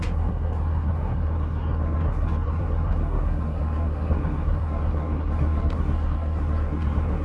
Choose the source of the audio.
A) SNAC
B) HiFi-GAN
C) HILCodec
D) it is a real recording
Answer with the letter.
A